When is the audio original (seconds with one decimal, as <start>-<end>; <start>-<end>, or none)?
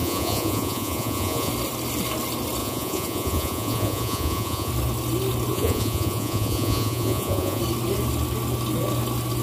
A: 1.5-2.6; 4.7-5.5; 7.6-9.4